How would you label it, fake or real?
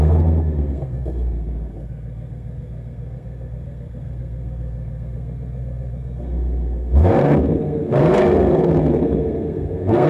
fake